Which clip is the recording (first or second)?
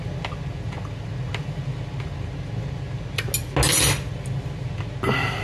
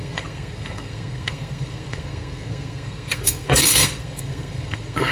first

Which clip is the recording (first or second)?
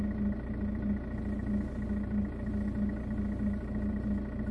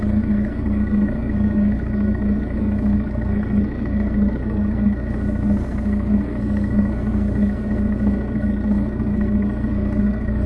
first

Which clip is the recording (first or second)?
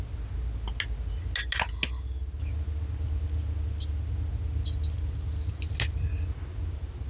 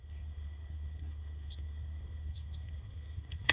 first